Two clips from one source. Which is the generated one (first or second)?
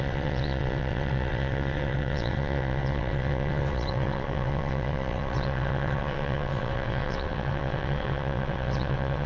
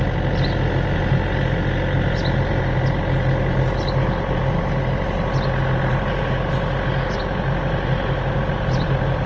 first